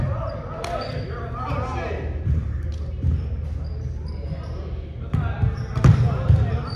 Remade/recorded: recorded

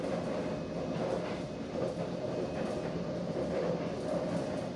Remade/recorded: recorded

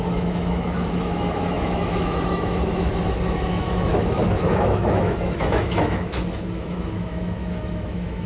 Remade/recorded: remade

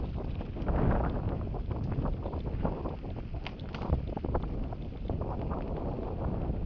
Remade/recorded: recorded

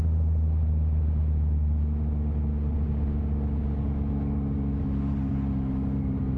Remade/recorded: recorded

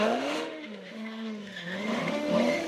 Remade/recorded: remade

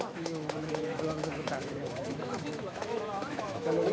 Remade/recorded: remade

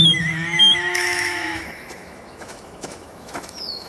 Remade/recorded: remade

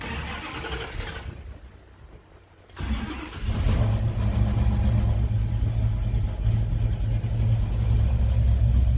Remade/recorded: recorded